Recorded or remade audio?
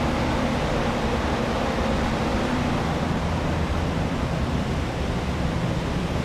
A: recorded